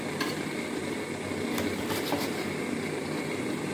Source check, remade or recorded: recorded